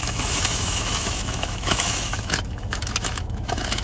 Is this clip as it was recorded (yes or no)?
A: no